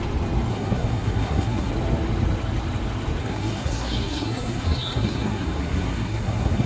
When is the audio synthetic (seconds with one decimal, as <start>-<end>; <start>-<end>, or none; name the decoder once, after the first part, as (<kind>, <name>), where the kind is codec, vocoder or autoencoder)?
0.5-1.7 (codec, SNAC); 3.2-6.7